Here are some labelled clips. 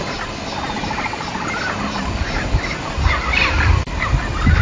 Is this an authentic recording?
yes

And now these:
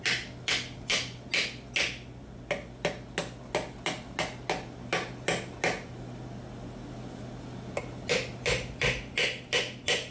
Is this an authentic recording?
yes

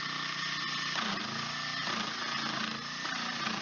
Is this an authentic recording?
yes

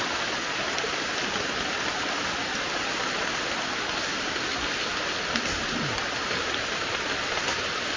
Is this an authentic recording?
yes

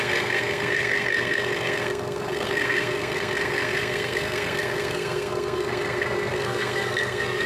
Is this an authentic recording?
no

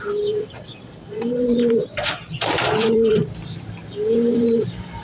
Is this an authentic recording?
no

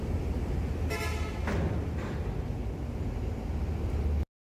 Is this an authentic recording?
yes